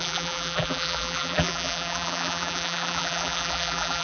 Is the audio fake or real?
fake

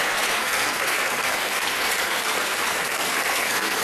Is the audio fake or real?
fake